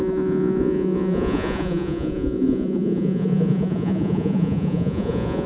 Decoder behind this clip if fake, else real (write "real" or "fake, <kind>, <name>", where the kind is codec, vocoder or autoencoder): fake, vocoder, Vocos